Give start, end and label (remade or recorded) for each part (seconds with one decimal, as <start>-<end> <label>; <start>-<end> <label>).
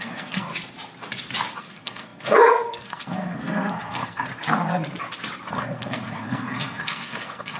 0.0-0.5 remade; 0.5-1.6 recorded; 1.6-4.3 remade; 4.3-5.5 recorded; 5.5-7.6 remade